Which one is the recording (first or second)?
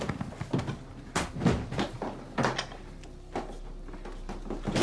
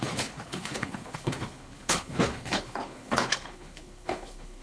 first